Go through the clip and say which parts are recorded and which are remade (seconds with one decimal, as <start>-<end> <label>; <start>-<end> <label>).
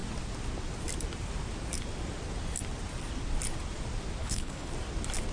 0.0-4.2 recorded; 4.2-4.7 remade; 4.7-5.3 recorded